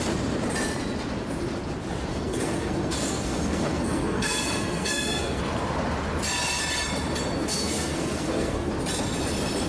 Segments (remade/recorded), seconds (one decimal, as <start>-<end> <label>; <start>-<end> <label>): 0.0-2.1 recorded; 2.1-5.4 remade; 5.4-7.5 recorded; 7.5-8.7 remade; 8.7-9.7 recorded